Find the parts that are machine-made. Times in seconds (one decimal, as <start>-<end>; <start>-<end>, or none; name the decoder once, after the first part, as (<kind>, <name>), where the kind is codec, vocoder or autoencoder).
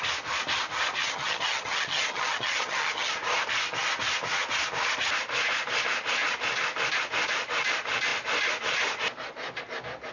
1.0-3.1 (vocoder, HiFi-GAN)